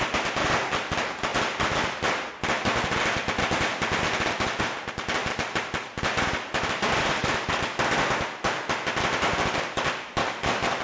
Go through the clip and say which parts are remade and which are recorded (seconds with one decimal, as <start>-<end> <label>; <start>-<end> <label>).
0.0-1.3 recorded; 1.3-2.3 remade; 2.3-3.7 recorded; 3.7-4.6 remade; 4.6-10.8 recorded